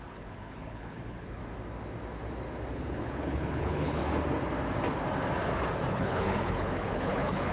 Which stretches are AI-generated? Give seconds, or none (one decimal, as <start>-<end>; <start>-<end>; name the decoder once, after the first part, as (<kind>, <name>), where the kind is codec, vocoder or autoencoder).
0.0-1.4 (codec, HILCodec); 2.7-4.0; 5.9-7.5